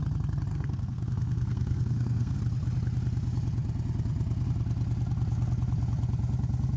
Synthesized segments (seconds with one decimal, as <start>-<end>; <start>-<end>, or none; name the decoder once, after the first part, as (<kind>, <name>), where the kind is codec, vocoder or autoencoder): 0.5-2.4 (codec, SNAC)